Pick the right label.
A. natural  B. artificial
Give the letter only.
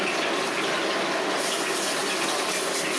A